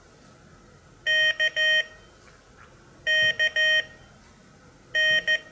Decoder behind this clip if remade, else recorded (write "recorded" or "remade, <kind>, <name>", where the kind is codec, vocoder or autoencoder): recorded